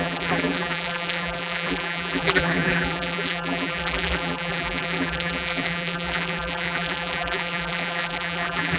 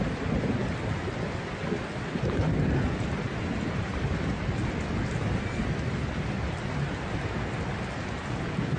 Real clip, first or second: second